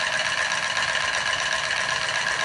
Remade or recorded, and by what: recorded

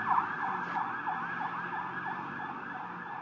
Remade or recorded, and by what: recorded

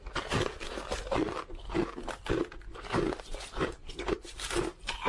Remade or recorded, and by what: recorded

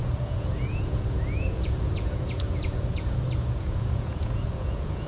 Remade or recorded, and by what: remade, vocoder, Vocos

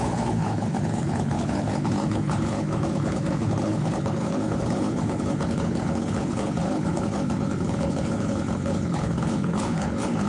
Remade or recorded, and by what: remade, codec, HILCodec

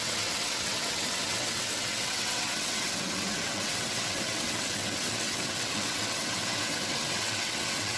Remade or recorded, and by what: remade, vocoder, WaveNeXt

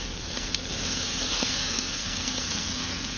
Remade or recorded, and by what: remade, codec, SNAC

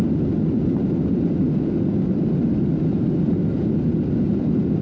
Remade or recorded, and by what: recorded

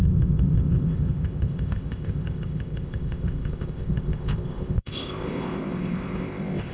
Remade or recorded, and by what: remade, codec, ZipCodec